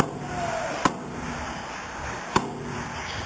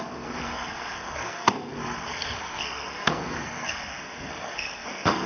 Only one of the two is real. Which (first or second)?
first